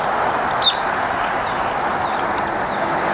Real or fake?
real